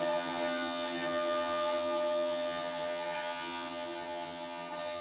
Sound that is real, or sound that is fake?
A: fake